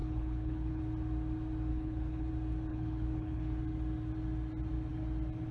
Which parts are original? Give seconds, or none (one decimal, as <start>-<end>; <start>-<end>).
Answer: 0.8-1.7; 2.3-2.7; 3.6-5.5